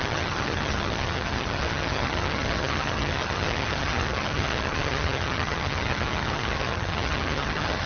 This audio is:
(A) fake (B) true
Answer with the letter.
A